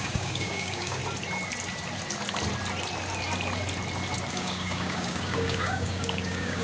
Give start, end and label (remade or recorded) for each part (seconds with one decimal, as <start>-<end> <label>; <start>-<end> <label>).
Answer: 0.0-1.0 remade; 1.0-4.3 recorded; 4.3-6.6 remade